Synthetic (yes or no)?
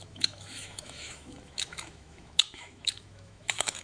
yes